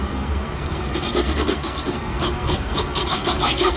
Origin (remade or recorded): remade